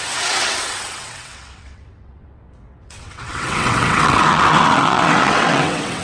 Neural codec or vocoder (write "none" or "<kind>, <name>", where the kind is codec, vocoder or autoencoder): vocoder, WaveNeXt